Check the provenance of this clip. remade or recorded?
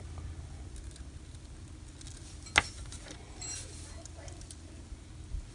recorded